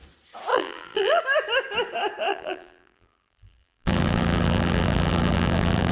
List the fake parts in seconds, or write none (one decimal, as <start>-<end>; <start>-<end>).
0.5-1.2; 2.3-5.9